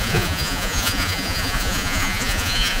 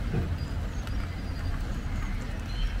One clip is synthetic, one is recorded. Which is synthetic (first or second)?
first